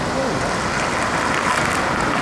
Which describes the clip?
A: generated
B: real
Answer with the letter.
B